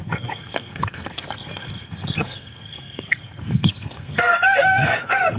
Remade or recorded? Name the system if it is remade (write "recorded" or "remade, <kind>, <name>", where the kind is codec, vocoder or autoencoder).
remade, codec, SNAC